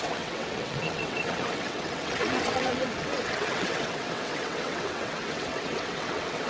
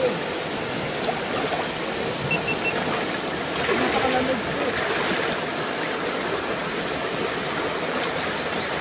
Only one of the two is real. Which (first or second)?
second